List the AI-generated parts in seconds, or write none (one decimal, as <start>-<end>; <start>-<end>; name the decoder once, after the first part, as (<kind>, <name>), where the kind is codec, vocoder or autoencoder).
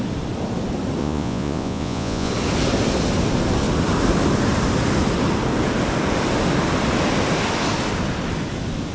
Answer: 1.0-2.3 (vocoder, Vocos)